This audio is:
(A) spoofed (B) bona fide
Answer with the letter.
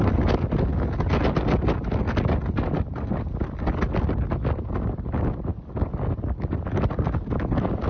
B